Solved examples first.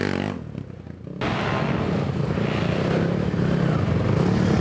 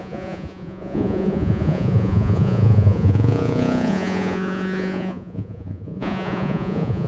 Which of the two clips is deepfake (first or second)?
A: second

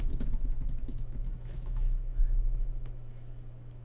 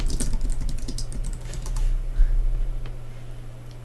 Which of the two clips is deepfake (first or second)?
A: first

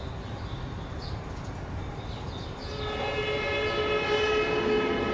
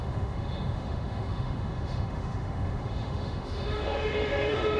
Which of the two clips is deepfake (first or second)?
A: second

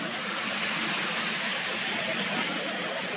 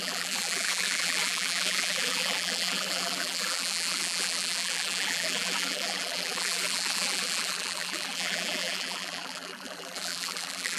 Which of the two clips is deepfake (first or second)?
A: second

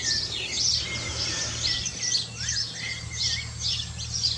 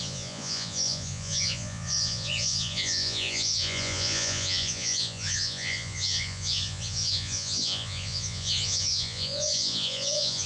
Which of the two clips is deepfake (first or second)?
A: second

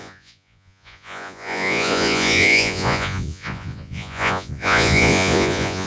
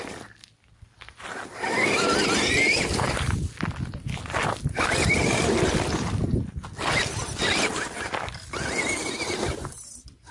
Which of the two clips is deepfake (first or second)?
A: first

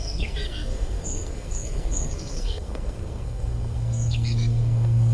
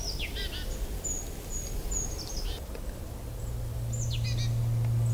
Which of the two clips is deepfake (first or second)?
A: first